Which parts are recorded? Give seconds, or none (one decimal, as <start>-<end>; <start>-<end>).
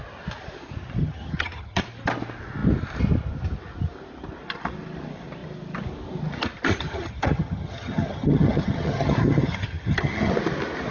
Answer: 0.0-1.0; 1.8-6.7; 10.3-10.9